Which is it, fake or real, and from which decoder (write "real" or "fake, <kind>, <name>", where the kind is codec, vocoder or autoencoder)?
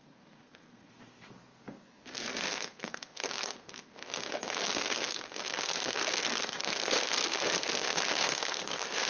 fake, codec, SNAC